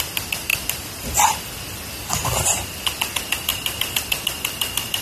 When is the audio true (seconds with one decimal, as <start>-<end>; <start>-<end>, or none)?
0.0-3.5; 4.0-5.0